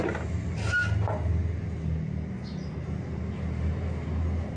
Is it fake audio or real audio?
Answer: real